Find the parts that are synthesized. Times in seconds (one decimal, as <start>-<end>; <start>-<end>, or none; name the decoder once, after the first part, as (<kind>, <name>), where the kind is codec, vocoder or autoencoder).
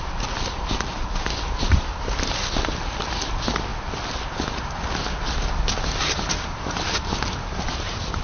0.0-3.7 (vocoder, BigVGAN v2); 7.6-8.2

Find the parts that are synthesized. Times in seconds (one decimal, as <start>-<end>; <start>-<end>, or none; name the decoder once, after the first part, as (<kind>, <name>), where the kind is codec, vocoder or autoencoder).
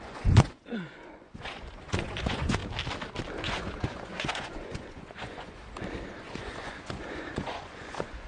0.0-2.6 (vocoder, Vocos); 3.4-5.6; 6.2-8.3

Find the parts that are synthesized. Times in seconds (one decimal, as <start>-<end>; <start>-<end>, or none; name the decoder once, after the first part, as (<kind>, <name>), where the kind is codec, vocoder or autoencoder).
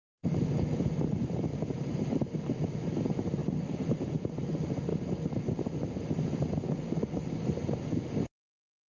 1.5-3.0 (vocoder, BigVGAN v2)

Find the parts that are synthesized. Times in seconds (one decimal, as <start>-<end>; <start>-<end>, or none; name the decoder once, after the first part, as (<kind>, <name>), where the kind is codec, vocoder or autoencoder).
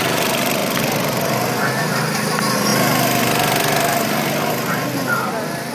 none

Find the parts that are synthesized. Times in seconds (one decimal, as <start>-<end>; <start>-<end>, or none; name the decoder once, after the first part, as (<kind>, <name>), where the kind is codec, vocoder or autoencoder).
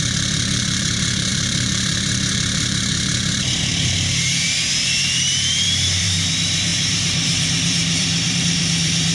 0.0-9.1 (vocoder, BigVGAN v2)